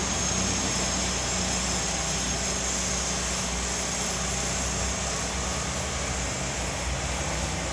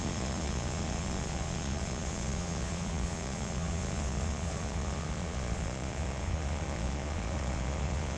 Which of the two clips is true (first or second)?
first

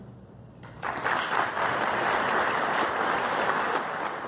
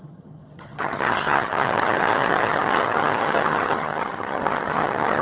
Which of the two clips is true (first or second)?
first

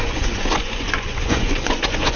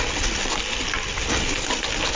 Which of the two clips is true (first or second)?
second